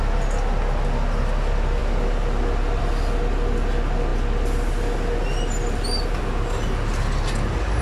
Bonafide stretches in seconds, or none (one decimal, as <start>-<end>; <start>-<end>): 0.0-7.8